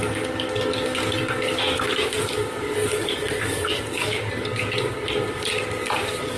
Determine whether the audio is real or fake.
fake